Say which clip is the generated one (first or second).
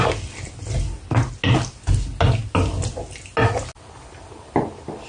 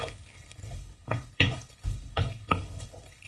second